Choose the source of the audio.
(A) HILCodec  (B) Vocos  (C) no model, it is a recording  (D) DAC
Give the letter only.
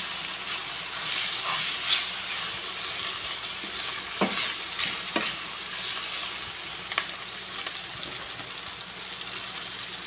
C